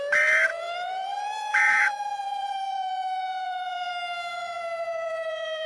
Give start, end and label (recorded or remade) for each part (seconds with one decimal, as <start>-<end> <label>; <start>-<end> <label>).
0.0-0.5 recorded; 0.5-3.9 remade; 3.9-4.3 recorded; 4.3-5.7 remade

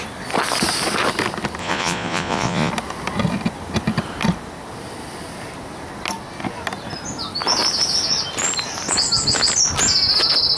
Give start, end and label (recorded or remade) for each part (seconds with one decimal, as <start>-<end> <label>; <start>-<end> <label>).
0.0-1.6 recorded; 1.6-2.7 remade; 2.7-10.6 recorded

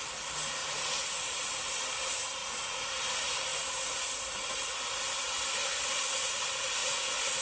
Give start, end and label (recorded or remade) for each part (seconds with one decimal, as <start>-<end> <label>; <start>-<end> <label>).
0.0-0.6 recorded; 0.6-1.5 remade; 1.5-2.4 recorded; 2.4-2.9 remade; 2.9-6.8 recorded; 6.8-7.4 remade

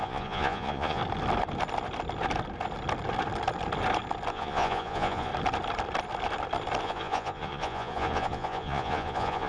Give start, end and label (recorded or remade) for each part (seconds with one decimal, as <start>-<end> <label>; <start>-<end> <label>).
0.0-1.0 remade; 1.0-4.3 recorded; 4.3-5.3 remade; 5.3-6.8 recorded; 6.8-9.5 remade